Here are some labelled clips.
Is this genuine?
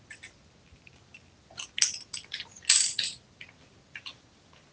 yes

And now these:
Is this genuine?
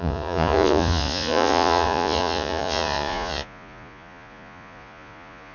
no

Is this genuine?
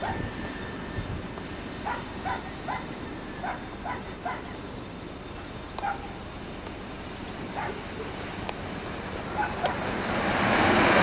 yes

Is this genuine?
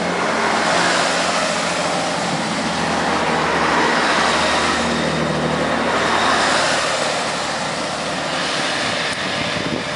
yes